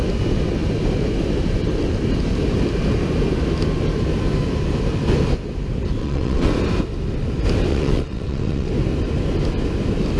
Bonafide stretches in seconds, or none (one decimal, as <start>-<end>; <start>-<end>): 0.0-6.0; 6.5-7.7; 8.7-10.2